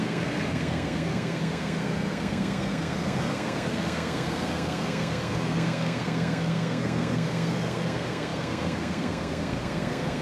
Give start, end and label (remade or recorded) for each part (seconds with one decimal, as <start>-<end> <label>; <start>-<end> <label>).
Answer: 0.0-10.2 remade